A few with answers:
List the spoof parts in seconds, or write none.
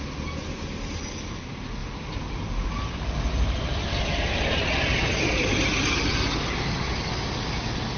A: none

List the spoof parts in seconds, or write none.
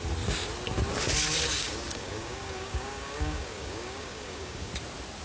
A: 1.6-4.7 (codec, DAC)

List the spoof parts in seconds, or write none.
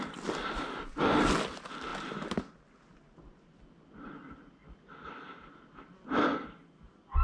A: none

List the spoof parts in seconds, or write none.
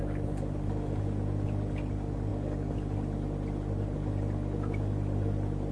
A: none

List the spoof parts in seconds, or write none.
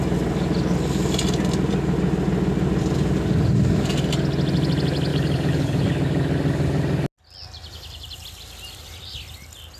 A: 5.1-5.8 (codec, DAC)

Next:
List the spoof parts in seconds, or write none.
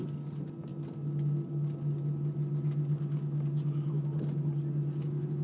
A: none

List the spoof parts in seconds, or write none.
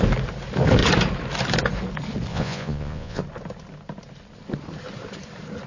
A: 2.3-3.2 (vocoder, Vocos)